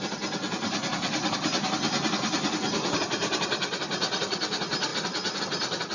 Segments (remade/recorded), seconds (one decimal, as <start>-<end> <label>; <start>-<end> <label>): 0.0-0.9 recorded; 0.9-3.1 remade; 3.1-5.9 recorded